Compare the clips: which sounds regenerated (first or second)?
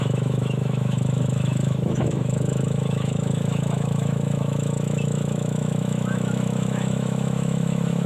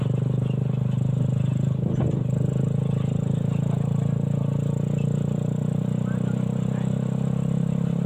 first